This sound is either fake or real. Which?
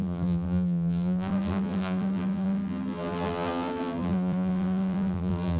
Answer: fake